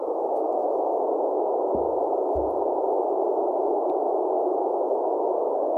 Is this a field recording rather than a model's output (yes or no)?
yes